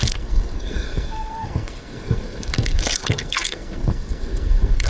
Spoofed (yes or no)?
yes